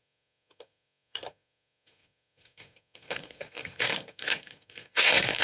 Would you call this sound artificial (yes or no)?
yes